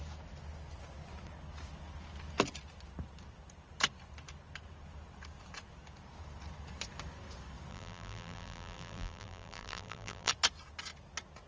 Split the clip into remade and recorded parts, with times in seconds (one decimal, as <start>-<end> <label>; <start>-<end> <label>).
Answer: 0.0-7.7 recorded; 7.7-10.3 remade; 10.3-11.5 recorded